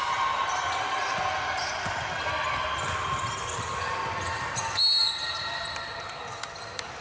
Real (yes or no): yes